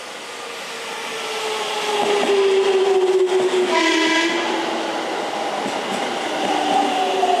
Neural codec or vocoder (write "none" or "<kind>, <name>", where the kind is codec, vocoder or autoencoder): none